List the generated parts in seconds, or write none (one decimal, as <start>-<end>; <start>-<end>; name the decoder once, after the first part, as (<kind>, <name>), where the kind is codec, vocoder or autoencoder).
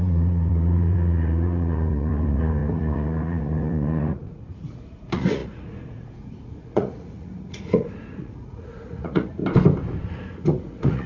0.0-9.4 (vocoder, Vocos); 10.1-11.1